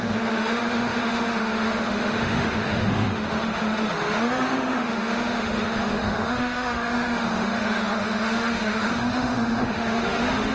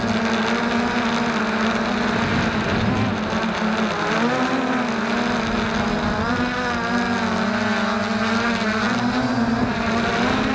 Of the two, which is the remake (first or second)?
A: first